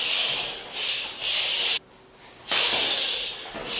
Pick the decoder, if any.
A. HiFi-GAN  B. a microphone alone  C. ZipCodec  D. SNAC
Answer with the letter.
B